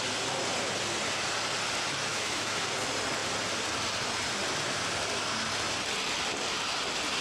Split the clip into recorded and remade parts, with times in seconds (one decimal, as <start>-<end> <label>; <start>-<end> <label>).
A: 0.0-2.1 recorded; 2.1-2.6 remade; 2.6-7.2 recorded